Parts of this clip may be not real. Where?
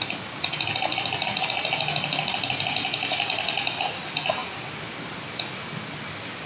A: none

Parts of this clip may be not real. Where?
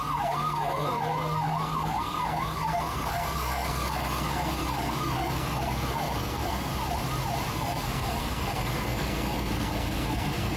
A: 0.0-6.7 (codec, SNAC); 7.5-10.6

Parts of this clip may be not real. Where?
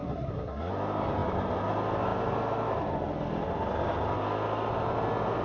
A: 0.0-0.7 (codec, SNAC)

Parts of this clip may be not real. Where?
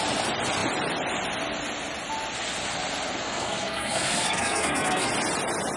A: 3.2-5.1 (codec, SNAC)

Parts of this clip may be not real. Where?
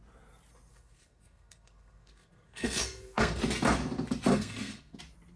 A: 0.7-3.4 (codec, SNAC); 4.3-5.0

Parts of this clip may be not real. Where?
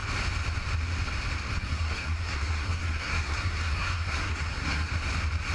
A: 1.6-4.9 (codec, SNAC)